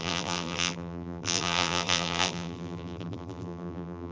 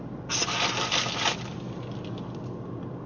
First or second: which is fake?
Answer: first